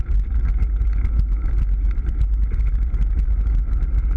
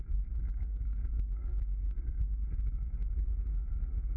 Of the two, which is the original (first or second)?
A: first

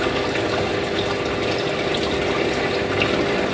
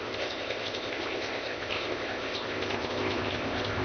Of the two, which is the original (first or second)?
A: first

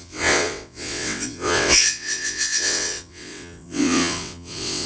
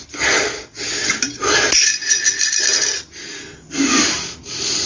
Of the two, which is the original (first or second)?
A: second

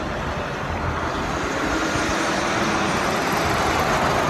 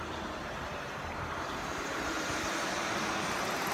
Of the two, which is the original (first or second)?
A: first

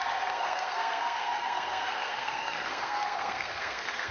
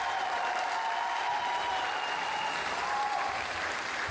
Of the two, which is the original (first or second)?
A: second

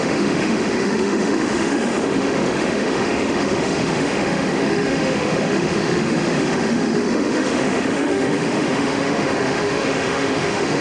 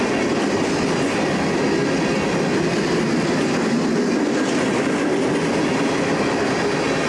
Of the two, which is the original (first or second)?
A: second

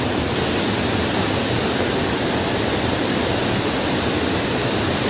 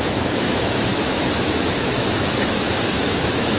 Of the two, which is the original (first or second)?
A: first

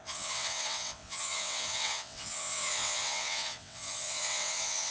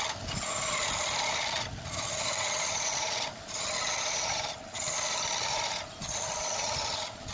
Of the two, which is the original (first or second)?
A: second